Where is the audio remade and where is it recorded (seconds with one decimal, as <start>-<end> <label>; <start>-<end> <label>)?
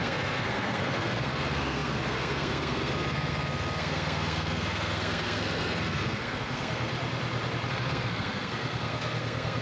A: 0.0-6.9 remade; 6.9-7.7 recorded; 7.7-9.6 remade